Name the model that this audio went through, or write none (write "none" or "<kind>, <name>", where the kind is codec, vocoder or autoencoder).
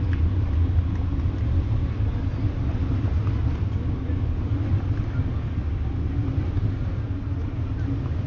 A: none